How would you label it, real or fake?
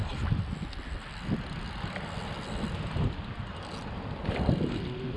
real